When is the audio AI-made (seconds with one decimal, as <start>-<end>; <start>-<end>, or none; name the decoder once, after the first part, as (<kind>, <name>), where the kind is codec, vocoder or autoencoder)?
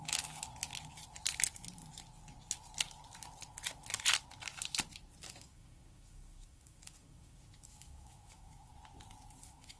0.0-0.5 (autoencoder, DAC-VAE); 5.2-8.7; 9.4-9.8